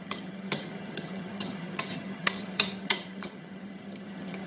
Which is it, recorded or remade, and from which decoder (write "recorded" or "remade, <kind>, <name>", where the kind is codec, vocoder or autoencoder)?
remade, vocoder, HiFi-GAN